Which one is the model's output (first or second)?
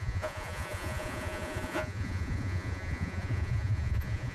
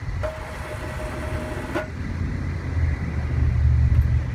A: first